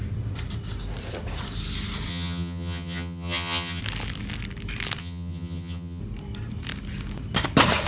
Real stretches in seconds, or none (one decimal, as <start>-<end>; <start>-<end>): 0.0-2.1; 3.8-5.0; 6.0-7.9